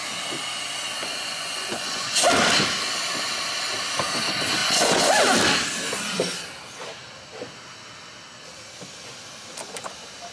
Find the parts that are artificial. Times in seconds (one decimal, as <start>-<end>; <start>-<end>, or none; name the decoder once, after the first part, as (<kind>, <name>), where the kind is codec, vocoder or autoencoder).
1.0-2.2 (vocoder, Vocos); 4.6-5.1